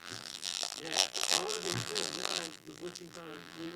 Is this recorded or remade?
remade